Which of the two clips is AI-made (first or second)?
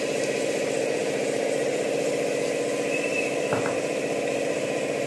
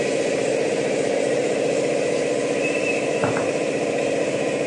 second